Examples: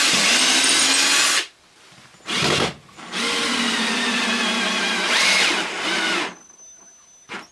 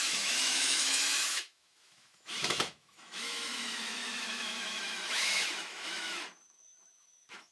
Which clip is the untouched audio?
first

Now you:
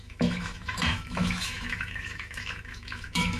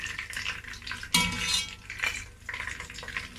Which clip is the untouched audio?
second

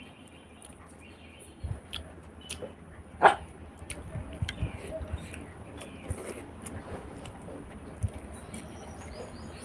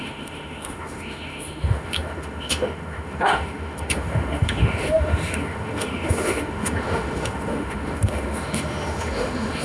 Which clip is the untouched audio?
first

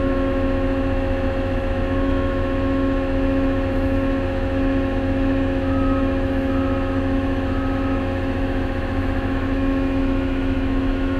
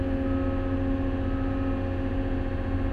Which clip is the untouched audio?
second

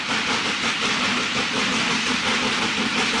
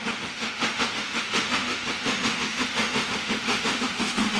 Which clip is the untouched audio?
first